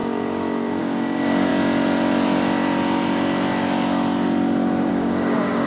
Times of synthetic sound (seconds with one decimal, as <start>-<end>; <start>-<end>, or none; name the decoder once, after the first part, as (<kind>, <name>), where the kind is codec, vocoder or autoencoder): 0.0-1.5 (codec, DAC); 4.9-5.7